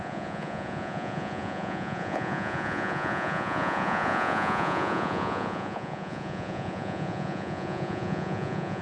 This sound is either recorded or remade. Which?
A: remade